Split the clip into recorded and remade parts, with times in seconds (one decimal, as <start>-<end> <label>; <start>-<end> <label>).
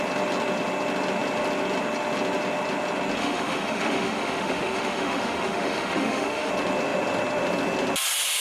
0.0-3.2 recorded; 3.2-6.5 remade; 6.5-8.4 recorded